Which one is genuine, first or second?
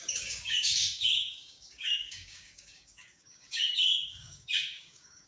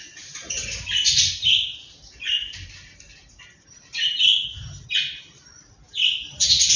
second